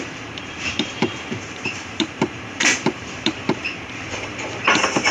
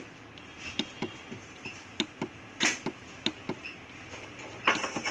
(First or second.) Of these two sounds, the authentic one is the second